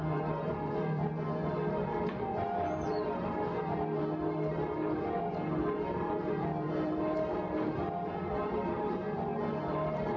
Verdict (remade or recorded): remade